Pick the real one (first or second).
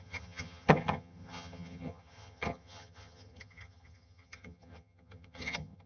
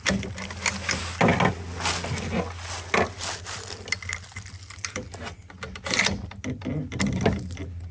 second